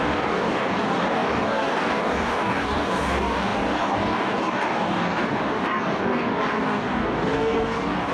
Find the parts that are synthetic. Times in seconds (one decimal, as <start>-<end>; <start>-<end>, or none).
0.0-8.1